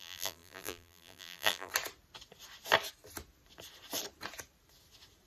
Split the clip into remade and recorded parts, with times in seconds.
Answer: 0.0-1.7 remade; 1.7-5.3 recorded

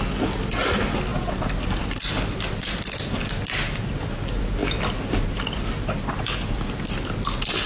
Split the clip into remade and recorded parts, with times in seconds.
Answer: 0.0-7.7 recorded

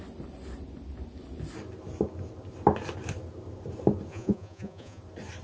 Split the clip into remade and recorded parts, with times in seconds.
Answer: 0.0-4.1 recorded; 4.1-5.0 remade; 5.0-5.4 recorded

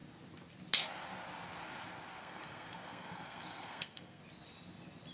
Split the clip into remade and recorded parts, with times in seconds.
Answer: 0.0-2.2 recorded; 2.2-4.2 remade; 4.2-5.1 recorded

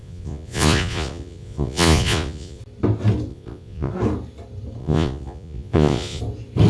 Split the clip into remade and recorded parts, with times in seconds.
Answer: 0.0-2.6 remade; 2.6-3.3 recorded; 3.3-3.9 remade; 3.9-4.8 recorded; 4.8-6.2 remade; 6.2-6.7 recorded

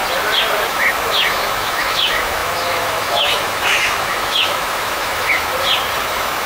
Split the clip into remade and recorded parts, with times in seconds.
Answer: 0.0-0.7 recorded; 0.7-5.5 remade; 5.5-6.0 recorded; 6.0-6.5 remade

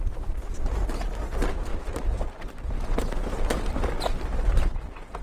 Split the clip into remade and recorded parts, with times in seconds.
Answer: 0.0-5.2 recorded

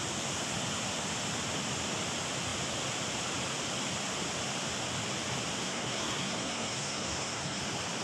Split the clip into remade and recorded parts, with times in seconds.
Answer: 0.0-5.6 recorded; 5.6-7.6 remade; 7.6-8.0 recorded